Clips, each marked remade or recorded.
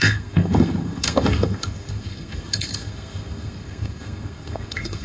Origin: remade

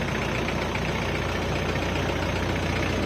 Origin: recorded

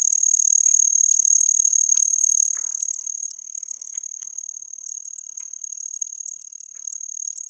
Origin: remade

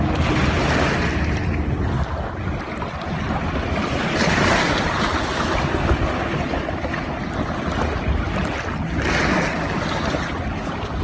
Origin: recorded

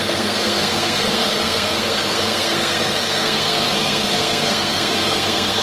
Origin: remade